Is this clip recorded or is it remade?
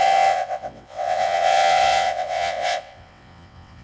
remade